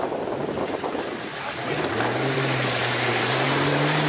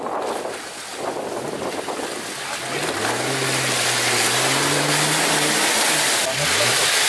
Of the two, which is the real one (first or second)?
second